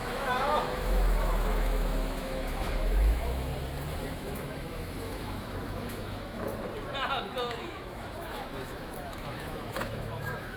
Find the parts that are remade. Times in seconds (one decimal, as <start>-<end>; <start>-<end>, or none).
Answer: 0.0-3.5; 4.1-6.5; 7.4-10.6